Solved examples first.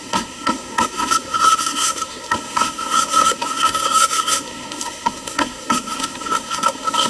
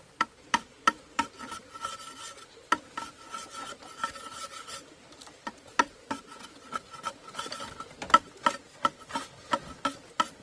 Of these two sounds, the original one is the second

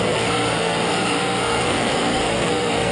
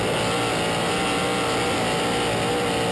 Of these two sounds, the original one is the second